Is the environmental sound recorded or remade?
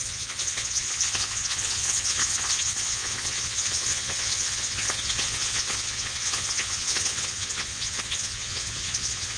remade